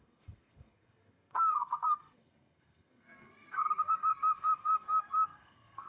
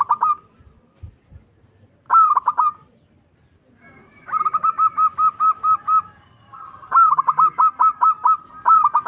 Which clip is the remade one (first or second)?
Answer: first